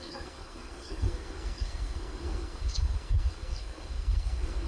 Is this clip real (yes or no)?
no